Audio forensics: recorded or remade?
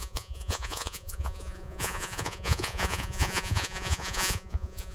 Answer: remade